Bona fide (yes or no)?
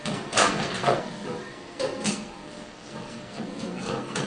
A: no